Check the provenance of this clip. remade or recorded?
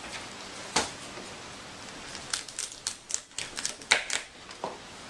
recorded